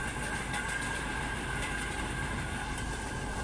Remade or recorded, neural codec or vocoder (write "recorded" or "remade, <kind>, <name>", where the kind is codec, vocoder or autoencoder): recorded